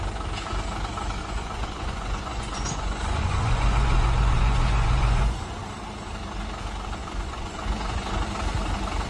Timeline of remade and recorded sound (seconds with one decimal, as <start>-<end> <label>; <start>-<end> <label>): 0.0-1.2 recorded; 1.2-5.4 remade; 5.4-7.0 recorded; 7.0-8.1 remade; 8.1-9.1 recorded